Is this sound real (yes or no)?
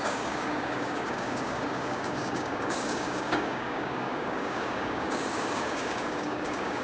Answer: no